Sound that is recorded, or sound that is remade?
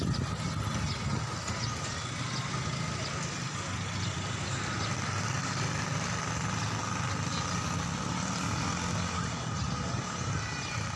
recorded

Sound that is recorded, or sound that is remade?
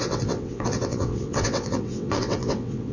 remade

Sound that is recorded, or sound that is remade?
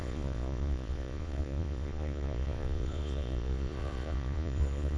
remade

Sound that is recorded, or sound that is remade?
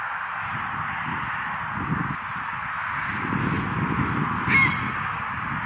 recorded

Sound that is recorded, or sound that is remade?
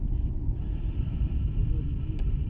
recorded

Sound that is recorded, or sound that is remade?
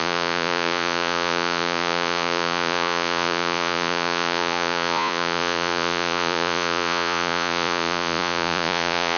remade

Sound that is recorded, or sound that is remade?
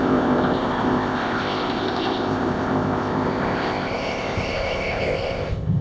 remade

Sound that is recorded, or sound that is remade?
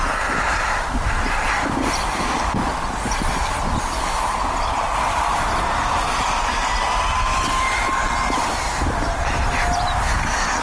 remade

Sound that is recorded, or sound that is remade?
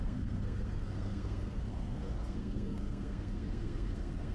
remade